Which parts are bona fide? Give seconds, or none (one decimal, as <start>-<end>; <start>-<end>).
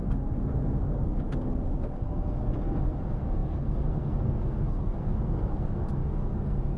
none